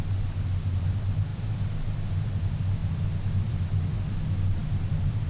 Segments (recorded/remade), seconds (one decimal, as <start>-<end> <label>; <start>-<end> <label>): 0.0-5.3 recorded